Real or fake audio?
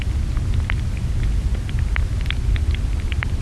real